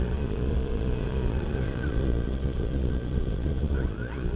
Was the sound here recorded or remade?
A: remade